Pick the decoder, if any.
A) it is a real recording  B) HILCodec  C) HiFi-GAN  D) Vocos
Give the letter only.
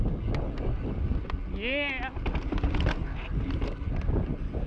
A